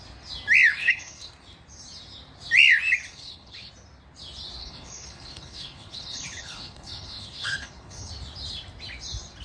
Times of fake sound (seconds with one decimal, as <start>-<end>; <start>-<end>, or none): 0.8-1.3; 3.1-3.7; 4.6-8.1

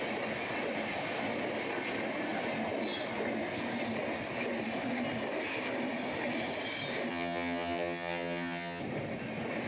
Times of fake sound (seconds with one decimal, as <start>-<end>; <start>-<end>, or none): 7.1-8.8

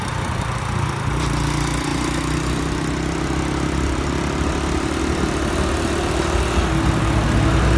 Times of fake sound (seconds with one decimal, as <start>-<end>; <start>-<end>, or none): none

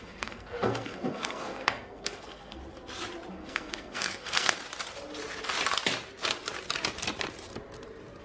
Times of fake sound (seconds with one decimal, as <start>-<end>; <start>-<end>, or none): 0.0-2.6; 3.3-4.6

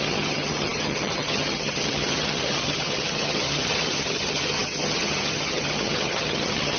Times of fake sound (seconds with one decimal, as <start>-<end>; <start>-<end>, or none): 0.0-6.8

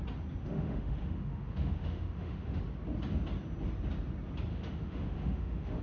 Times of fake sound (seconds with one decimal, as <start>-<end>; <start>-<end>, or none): 0.4-2.6; 4.5-5.8